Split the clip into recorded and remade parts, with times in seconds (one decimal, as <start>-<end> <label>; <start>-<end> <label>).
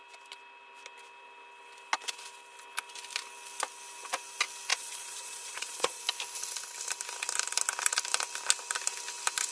0.0-4.7 recorded; 4.7-6.0 remade; 6.0-9.5 recorded